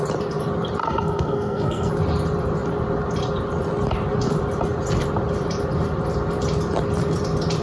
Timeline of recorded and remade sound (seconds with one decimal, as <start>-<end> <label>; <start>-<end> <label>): 0.0-0.8 recorded; 0.8-1.9 remade; 1.9-7.6 recorded